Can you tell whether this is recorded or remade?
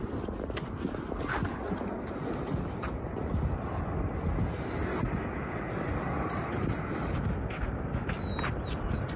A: recorded